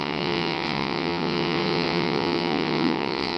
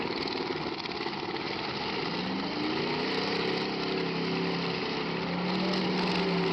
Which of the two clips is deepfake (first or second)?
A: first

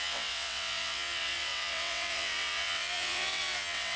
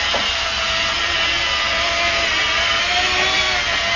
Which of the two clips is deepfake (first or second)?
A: first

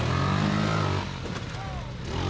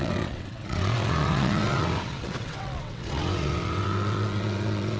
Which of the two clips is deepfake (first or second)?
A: second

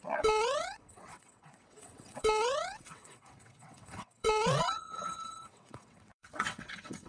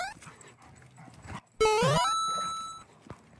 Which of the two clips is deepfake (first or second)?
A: first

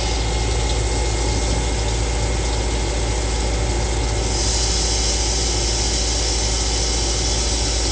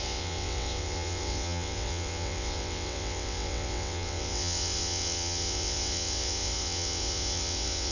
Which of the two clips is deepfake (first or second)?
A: second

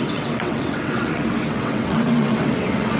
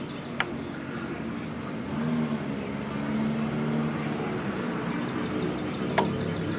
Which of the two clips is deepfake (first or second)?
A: first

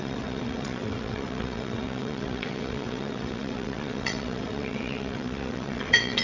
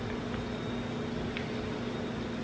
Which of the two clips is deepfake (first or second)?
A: first